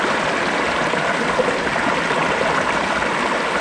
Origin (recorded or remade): recorded